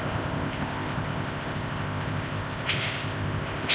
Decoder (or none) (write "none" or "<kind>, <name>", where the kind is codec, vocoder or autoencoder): codec, ZipCodec